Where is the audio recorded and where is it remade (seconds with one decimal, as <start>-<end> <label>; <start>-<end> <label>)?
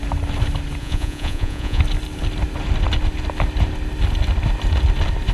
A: 0.0-0.8 recorded; 0.8-1.8 remade; 1.8-5.3 recorded